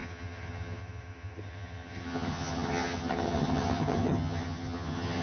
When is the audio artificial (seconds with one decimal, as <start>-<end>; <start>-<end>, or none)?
0.0-5.2